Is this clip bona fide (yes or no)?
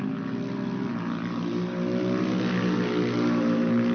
yes